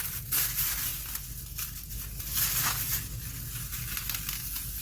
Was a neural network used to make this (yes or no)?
no